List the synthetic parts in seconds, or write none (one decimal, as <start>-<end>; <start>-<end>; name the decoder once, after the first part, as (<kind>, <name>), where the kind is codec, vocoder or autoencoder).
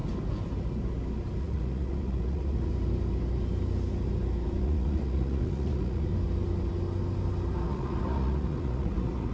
1.4-2.7 (vocoder, Vocos); 4.6-6.1; 7.7-9.3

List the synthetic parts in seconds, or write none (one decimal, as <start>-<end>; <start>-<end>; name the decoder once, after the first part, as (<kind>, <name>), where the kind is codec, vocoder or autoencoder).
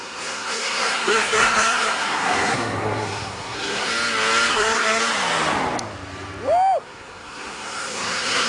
0.0-3.9 (codec, SNAC); 4.5-5.0; 6.8-8.5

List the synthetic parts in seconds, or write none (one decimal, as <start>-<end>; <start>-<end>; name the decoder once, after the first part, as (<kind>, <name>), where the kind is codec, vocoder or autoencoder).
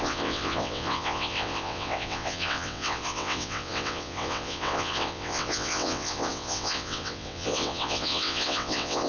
0.0-9.1 (vocoder, WaveNeXt)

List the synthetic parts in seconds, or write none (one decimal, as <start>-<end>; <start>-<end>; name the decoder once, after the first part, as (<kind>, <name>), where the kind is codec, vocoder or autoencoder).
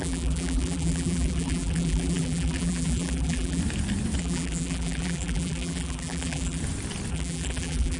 0.0-3.6 (vocoder, BigVGAN v2); 4.2-6.6; 7.1-8.0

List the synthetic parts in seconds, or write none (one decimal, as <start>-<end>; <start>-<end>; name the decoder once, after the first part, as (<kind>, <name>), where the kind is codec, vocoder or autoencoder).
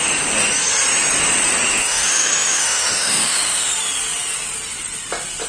1.7-3.7 (autoencoder, DAC-VAE)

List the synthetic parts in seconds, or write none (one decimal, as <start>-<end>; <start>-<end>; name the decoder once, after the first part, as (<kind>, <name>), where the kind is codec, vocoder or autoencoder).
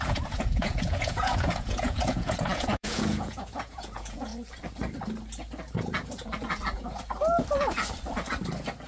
0.0-4.3 (vocoder, Vocos)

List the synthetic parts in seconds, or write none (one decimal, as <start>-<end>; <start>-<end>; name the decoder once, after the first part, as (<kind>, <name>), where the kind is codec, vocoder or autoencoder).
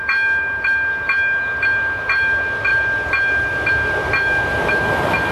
none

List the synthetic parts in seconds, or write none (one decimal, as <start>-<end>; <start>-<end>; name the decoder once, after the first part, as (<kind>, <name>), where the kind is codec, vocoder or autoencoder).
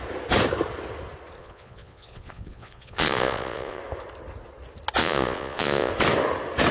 1.4-3.8 (vocoder, Vocos); 5.0-5.9